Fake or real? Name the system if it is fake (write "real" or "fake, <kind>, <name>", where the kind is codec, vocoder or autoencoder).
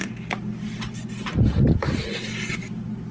real